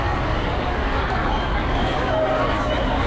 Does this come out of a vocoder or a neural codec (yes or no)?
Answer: yes